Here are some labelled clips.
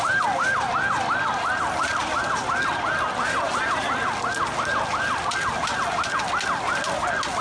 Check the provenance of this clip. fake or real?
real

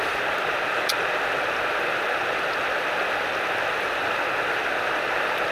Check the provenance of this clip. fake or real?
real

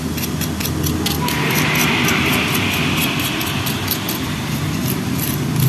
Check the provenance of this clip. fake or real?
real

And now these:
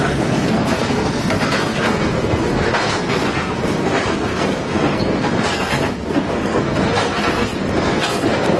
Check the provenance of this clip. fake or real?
fake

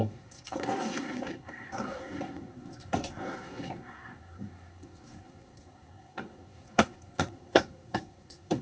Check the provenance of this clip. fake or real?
fake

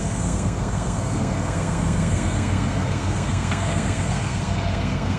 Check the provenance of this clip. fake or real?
fake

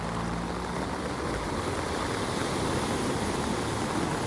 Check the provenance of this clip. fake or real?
real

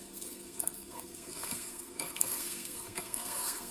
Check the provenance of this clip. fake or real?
fake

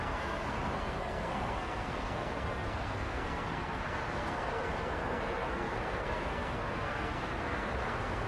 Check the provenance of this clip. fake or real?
fake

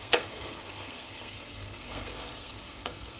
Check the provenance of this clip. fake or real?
fake